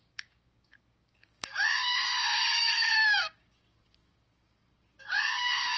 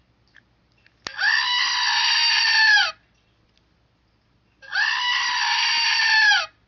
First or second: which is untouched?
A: second